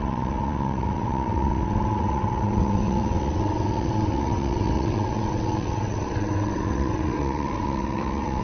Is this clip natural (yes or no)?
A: no